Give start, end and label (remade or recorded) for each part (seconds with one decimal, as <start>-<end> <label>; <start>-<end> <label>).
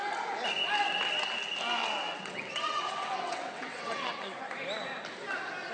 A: 0.0-1.8 recorded; 1.8-4.4 remade; 4.4-5.7 recorded